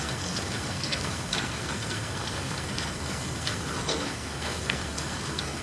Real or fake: fake